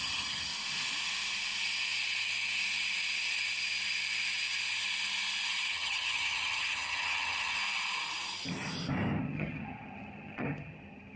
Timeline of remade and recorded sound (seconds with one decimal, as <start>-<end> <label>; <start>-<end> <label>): 0.0-0.5 remade; 0.5-5.7 recorded; 5.7-7.6 remade; 7.6-9.2 recorded; 9.2-11.2 remade